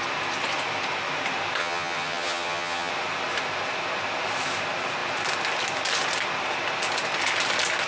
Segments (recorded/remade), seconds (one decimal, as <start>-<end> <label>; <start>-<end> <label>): 0.0-1.6 recorded; 1.6-2.9 remade; 2.9-7.9 recorded